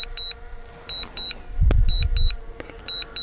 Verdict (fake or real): real